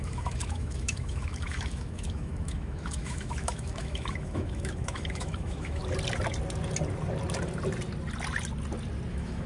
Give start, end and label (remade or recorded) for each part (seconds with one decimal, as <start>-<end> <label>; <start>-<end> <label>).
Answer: 0.0-5.8 remade; 5.8-9.1 recorded; 9.1-9.5 remade